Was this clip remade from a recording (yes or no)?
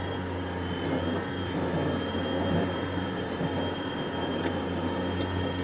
no